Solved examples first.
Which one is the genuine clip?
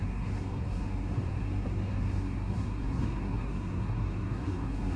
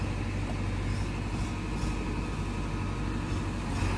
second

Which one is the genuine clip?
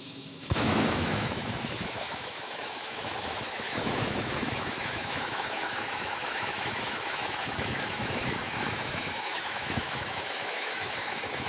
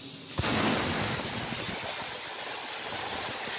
second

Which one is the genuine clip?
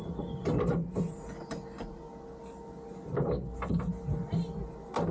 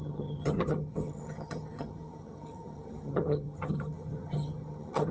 first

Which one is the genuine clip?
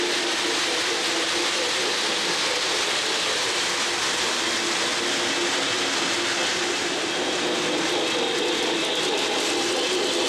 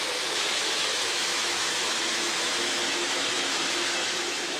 first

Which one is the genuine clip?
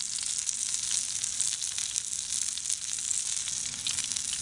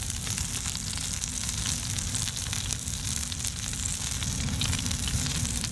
first